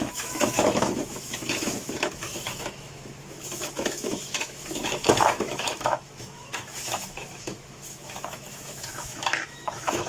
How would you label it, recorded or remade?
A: remade